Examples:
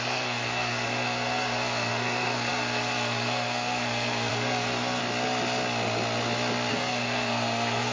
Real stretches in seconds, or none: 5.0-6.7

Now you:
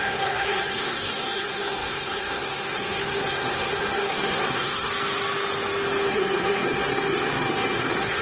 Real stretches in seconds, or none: 4.9-6.1

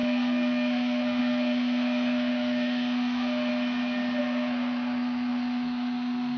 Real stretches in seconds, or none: 3.5-4.2

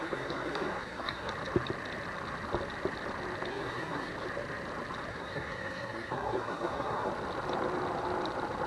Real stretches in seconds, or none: 1.3-3.5; 4.1-5.1; 7.1-8.7

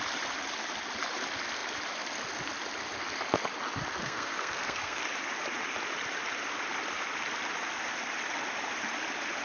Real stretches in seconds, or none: 0.0-4.0; 5.0-9.4

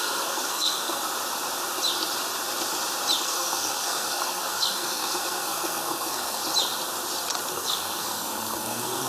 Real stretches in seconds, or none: 1.0-3.2; 6.4-7.5